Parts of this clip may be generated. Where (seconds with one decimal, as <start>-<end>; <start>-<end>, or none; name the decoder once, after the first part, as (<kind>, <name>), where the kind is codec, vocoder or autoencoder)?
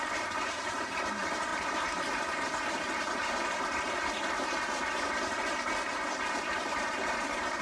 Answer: 0.0-7.6 (vocoder, BigVGAN v2)